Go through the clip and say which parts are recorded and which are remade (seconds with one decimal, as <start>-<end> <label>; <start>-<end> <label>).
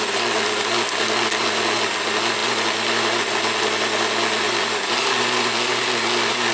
0.0-6.5 recorded